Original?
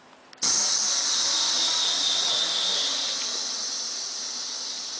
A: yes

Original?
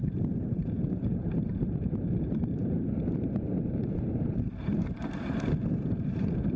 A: no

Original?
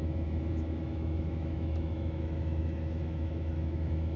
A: no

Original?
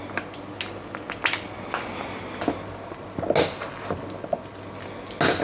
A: yes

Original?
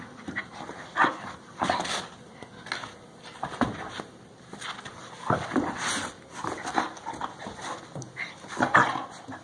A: yes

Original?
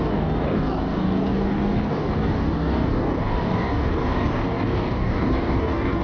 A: no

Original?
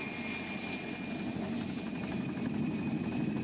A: yes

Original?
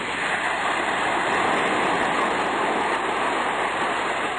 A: yes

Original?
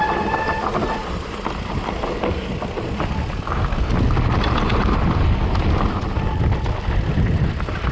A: yes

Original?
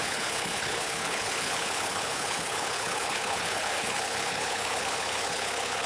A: no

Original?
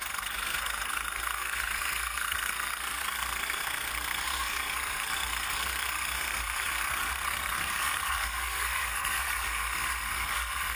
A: no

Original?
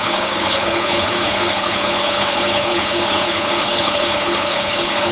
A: no